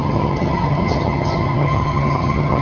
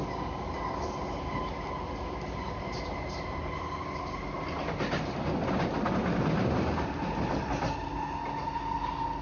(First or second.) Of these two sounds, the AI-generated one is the first